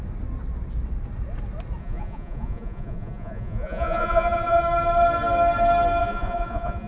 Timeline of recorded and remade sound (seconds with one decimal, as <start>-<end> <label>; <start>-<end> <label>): 0.0-1.8 recorded; 1.8-4.6 remade; 4.6-6.0 recorded; 6.0-6.9 remade